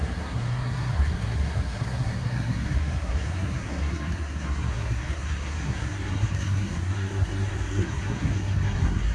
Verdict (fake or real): fake